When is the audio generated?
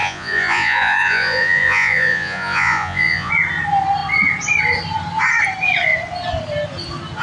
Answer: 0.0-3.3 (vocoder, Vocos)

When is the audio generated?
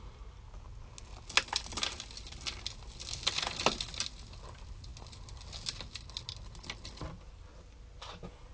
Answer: none